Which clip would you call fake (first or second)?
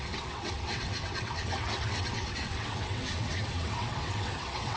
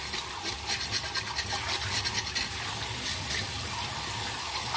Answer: first